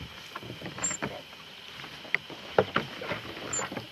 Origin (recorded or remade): recorded